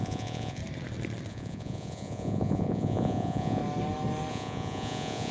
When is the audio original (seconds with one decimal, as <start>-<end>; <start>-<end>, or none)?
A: 0.6-1.3; 3.6-4.3